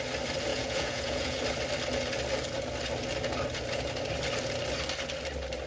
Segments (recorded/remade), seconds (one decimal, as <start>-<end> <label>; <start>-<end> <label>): 0.0-0.5 recorded; 0.5-1.4 remade; 1.4-5.7 recorded